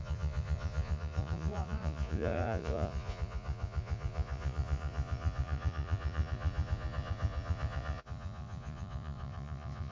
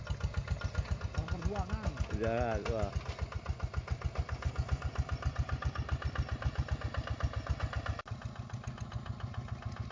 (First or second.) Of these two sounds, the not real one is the first